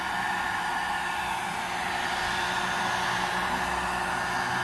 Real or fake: fake